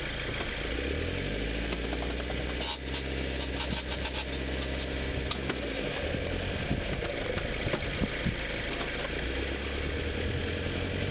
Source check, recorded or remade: recorded